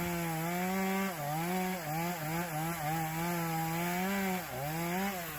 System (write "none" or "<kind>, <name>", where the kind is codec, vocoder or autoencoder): none